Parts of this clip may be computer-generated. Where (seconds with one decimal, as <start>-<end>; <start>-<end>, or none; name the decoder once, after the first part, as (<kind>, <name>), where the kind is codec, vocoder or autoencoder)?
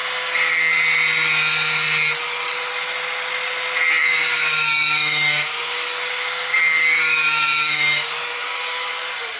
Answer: 0.0-0.7 (codec, DAC); 4.0-8.9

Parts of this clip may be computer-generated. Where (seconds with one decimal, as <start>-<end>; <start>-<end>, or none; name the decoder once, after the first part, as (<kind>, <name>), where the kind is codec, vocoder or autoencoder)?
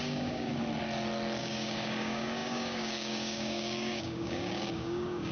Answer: 0.0-0.5 (codec, DAC); 1.4-5.3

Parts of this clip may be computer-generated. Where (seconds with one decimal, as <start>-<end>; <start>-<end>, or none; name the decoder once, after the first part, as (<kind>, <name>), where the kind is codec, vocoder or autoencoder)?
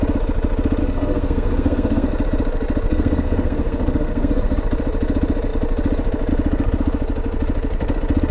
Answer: 0.8-2.1 (codec, SNAC); 2.9-4.6